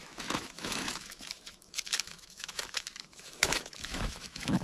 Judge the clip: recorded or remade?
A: remade